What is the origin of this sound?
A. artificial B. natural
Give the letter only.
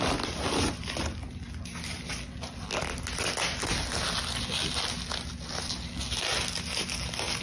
B